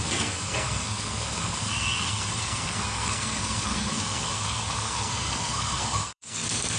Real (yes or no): no